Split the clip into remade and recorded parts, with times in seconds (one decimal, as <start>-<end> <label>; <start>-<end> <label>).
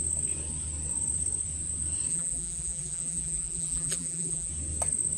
0.0-2.1 recorded; 2.1-4.5 remade; 4.5-5.2 recorded